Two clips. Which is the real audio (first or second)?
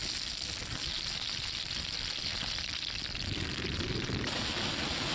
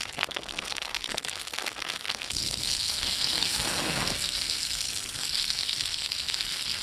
first